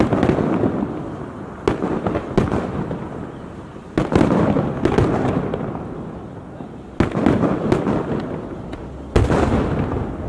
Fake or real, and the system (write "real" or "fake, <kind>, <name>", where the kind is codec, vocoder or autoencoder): real